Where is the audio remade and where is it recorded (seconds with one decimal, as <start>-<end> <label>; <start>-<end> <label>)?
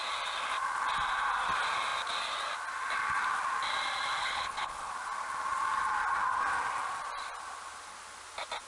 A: 0.0-4.2 recorded; 4.2-4.9 remade; 4.9-8.7 recorded